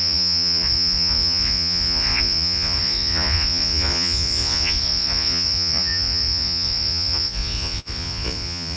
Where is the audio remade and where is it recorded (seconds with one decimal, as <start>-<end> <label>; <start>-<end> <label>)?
0.0-8.8 remade